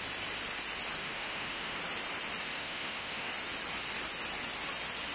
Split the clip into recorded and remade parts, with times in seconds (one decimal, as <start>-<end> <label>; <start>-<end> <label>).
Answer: 0.0-1.0 recorded; 1.0-1.8 remade; 1.8-2.5 recorded; 2.5-3.3 remade; 3.3-5.1 recorded